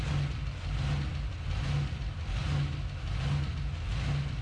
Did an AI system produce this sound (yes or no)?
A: no